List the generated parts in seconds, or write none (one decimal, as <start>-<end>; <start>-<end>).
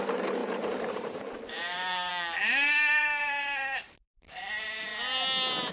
0.0-2.1; 3.0-4.9